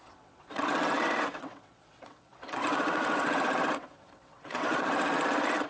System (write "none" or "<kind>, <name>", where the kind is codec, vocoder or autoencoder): vocoder, WaveNeXt